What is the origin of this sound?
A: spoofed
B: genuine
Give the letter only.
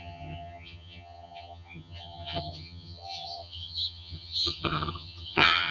A